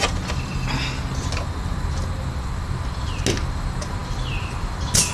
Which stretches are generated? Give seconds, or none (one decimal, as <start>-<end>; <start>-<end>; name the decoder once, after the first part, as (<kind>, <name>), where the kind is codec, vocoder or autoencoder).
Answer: none